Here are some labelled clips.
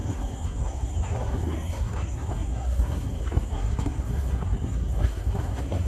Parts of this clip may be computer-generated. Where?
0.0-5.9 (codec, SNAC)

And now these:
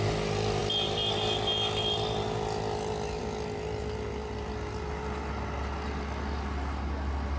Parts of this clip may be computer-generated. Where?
none

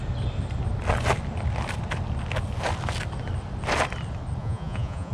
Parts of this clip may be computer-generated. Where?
4.4-5.1 (vocoder, Vocos)

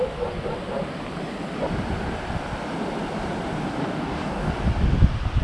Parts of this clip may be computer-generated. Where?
3.8-4.5 (codec, DAC)